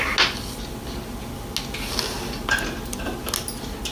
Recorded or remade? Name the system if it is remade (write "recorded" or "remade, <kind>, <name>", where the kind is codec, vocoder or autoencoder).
recorded